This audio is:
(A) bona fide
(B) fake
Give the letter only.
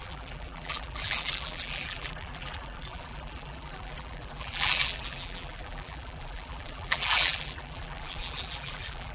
B